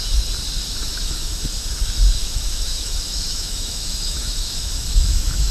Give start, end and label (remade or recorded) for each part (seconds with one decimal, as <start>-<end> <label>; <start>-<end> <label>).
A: 0.0-0.6 recorded; 0.6-1.8 remade; 1.8-2.2 recorded; 2.2-5.5 remade